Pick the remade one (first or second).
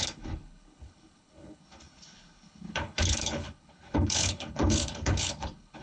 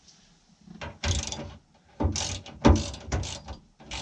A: first